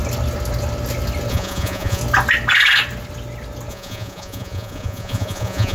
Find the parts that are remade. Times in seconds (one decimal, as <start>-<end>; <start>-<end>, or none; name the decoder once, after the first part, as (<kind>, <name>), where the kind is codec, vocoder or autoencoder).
1.3-2.0 (vocoder, Vocos); 3.7-5.7